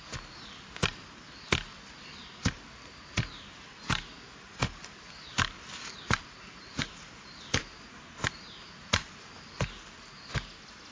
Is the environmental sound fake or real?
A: real